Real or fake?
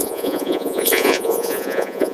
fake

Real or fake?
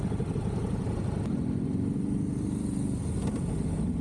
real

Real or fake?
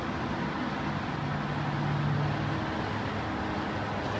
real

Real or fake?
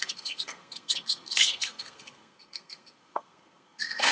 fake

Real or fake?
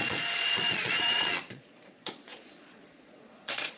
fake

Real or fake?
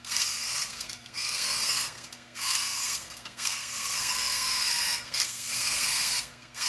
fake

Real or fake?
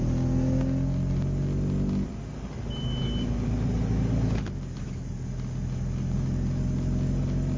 real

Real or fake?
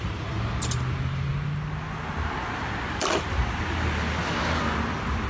real